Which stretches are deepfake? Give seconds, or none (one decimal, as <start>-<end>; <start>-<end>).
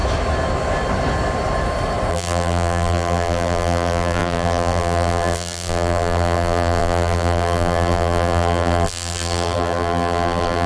2.1-10.7